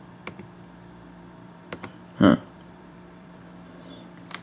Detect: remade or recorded remade